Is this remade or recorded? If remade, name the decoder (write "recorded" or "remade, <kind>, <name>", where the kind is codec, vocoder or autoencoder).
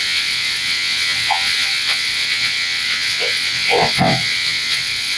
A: remade, vocoder, WaveNeXt